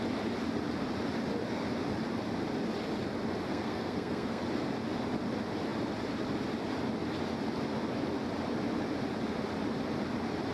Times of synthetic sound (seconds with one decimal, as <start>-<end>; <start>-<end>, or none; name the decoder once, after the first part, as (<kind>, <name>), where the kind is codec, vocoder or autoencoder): 3.5-4.4 (codec, SNAC)